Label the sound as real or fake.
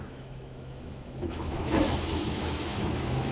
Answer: fake